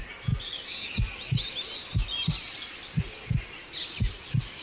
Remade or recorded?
recorded